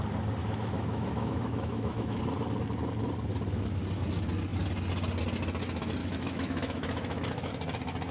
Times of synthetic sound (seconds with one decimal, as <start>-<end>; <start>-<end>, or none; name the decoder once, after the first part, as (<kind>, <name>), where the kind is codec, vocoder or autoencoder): 0.4-2.2 (autoencoder, DAC-VAE); 6.0-7.5